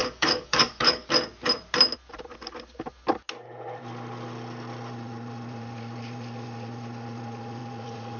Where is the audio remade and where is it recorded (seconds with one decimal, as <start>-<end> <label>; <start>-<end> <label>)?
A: 0.0-1.1 remade; 1.1-8.2 recorded